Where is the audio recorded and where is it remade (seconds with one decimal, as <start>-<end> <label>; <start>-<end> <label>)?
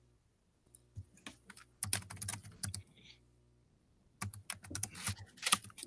0.0-5.9 recorded